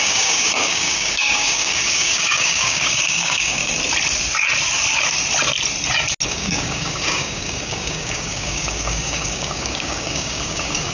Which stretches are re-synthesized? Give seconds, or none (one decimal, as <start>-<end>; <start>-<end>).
0.0-3.6; 6.3-10.9